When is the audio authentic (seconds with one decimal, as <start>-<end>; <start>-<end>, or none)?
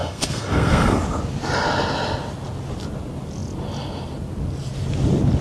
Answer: 1.0-5.4